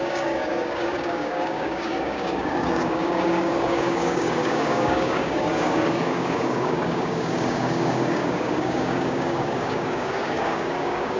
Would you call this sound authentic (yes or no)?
no